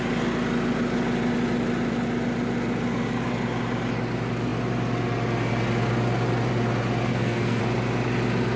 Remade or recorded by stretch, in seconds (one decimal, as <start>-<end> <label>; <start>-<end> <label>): 0.0-7.1 recorded; 7.1-7.6 remade; 7.6-8.6 recorded